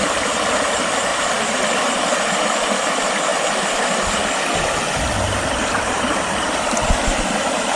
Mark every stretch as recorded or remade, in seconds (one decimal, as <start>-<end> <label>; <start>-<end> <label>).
0.0-3.3 remade; 3.3-5.6 recorded; 5.6-7.8 remade